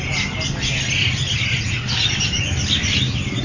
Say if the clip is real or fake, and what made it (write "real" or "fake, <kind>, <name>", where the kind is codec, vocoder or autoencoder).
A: real